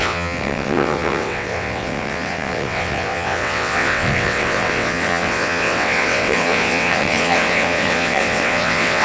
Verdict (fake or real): fake